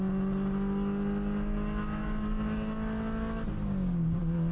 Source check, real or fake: real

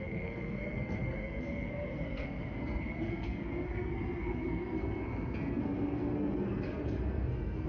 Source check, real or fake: fake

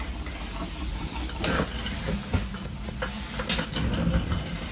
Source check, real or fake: real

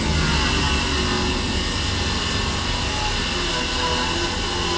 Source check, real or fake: real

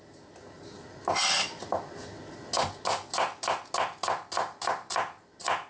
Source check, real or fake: real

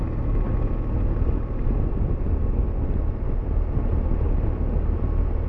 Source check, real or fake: real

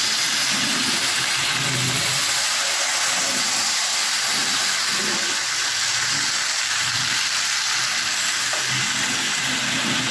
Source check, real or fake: real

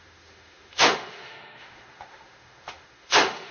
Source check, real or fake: fake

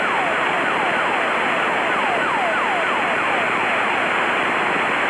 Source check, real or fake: real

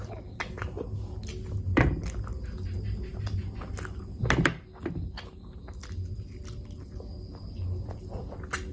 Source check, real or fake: real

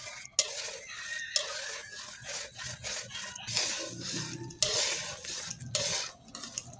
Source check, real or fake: real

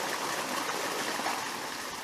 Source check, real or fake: real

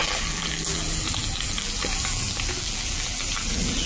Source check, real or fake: fake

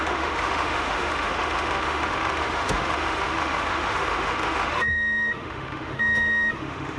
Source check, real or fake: fake